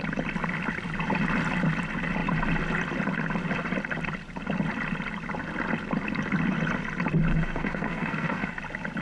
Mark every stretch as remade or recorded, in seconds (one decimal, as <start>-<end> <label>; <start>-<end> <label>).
0.0-7.3 recorded; 7.3-8.6 remade; 8.6-9.0 recorded